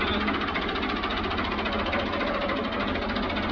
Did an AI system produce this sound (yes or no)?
no